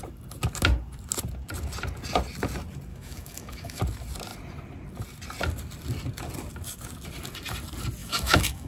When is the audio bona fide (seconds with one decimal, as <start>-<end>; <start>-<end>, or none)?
0.0-2.9; 3.8-8.0